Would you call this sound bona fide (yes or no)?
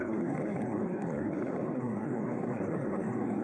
no